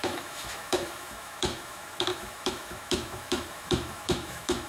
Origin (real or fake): fake